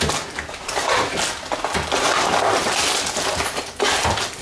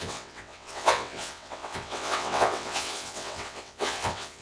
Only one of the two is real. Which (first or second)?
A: first